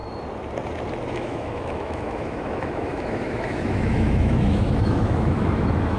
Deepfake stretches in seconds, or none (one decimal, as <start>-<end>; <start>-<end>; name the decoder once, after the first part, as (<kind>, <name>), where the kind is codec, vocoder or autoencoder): 1.1-6.0 (autoencoder, DAC-VAE)

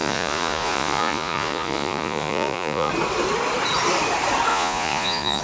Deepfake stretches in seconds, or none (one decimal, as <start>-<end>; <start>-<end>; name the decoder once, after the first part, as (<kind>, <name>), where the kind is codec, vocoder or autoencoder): 0.0-2.9 (vocoder, Vocos); 4.5-5.4

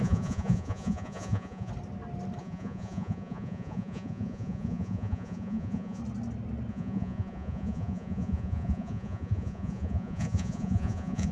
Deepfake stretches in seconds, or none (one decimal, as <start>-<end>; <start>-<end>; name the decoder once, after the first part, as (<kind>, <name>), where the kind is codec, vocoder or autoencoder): 0.0-1.7 (vocoder, Vocos); 2.4-6.0; 6.7-11.3

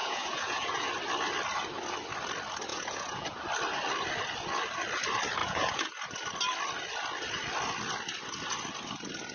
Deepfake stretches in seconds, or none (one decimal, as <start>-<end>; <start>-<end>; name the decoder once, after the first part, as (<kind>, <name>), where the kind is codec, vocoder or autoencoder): 0.0-0.9 (vocoder, Vocos); 2.7-3.4; 5.4-5.9

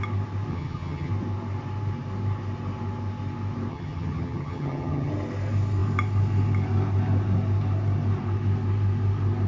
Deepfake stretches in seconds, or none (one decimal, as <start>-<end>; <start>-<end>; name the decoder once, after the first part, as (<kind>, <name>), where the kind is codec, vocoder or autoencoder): 0.5-1.1 (vocoder, HiFi-GAN); 3.7-5.1